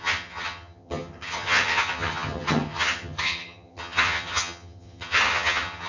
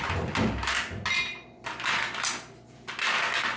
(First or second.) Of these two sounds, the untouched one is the second